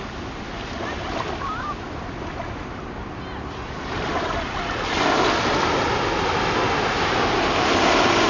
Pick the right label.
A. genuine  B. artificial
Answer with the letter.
A